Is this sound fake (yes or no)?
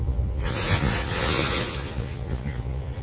yes